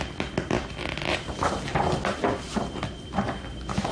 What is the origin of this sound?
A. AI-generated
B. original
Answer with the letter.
B